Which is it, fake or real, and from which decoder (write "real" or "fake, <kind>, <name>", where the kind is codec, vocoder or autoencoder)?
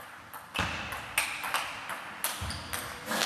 real